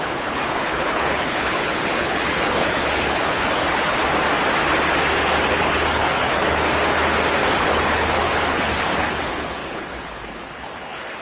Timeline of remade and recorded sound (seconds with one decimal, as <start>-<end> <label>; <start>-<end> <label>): 0.0-4.0 remade; 4.0-5.5 recorded; 5.5-6.6 remade; 6.6-7.6 recorded; 7.6-11.2 remade